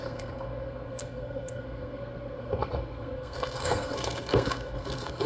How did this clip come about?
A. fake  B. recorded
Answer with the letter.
A